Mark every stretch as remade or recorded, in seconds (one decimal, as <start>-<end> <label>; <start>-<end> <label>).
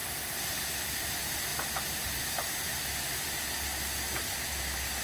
0.0-5.0 recorded